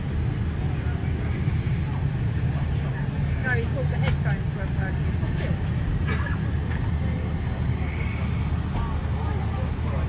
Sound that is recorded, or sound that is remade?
recorded